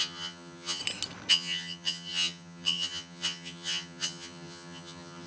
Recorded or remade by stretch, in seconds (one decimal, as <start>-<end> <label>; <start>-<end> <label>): 0.0-0.8 remade; 0.8-1.3 recorded; 1.3-5.3 remade